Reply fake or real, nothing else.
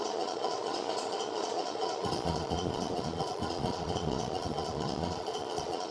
fake